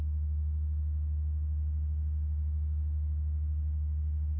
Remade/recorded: recorded